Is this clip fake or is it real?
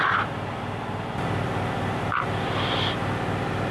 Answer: real